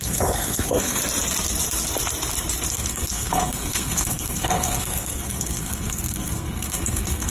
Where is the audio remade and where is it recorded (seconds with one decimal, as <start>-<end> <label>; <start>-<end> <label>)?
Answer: 0.0-1.0 remade; 1.0-2.7 recorded; 2.7-7.3 remade